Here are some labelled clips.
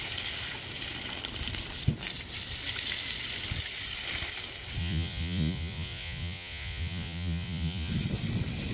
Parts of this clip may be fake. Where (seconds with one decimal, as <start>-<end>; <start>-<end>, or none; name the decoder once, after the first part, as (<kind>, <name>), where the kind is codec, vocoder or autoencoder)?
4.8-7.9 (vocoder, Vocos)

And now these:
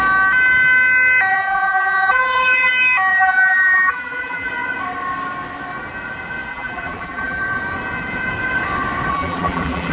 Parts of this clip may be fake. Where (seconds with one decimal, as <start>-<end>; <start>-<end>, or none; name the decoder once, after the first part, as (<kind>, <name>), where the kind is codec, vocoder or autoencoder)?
1.3-2.7 (vocoder, BigVGAN v2); 3.1-4.5; 6.5-7.4; 9.1-9.9

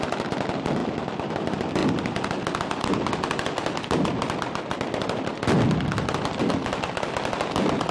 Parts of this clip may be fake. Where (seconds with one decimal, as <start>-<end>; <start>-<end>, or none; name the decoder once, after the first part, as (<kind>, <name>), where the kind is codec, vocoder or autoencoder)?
none

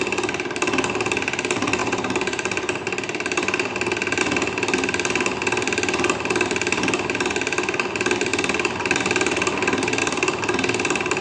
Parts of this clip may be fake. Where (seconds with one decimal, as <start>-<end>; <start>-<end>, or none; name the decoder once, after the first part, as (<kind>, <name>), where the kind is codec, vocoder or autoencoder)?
1.8-4.2 (vocoder, BigVGAN v2); 8.3-10.0

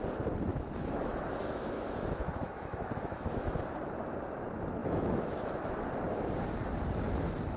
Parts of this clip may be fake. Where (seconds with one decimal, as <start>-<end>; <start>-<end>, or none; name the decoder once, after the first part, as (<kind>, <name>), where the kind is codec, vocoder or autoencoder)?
0.5-3.6 (autoencoder, DAC-VAE); 4.8-5.6

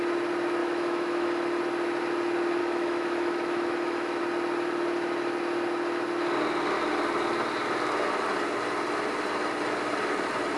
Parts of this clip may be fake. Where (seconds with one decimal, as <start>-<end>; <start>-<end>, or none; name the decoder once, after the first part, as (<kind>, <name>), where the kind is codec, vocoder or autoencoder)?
0.6-1.6 (autoencoder, DAC-VAE); 2.6-4.2